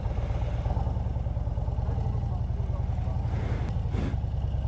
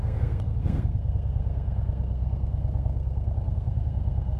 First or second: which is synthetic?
second